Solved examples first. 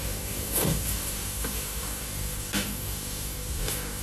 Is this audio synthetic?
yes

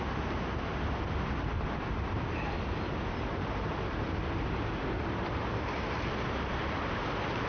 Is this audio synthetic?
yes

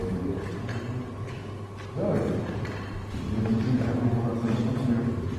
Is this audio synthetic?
no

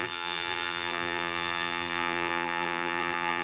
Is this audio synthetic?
yes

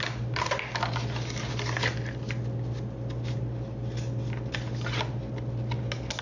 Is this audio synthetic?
no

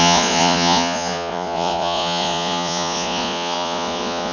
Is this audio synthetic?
yes